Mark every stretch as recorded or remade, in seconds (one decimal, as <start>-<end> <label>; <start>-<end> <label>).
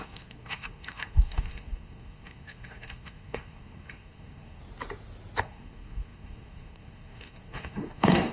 0.0-4.6 remade; 4.6-5.4 recorded; 5.4-8.3 remade